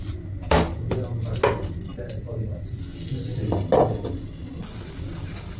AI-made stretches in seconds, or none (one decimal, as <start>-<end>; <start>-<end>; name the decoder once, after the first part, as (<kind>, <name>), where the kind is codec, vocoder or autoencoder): 1.9-2.8 (vocoder, BigVGAN v2)